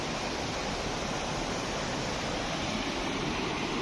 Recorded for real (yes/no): yes